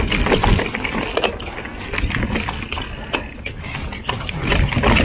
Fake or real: real